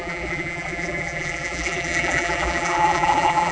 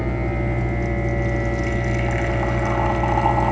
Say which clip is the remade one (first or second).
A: first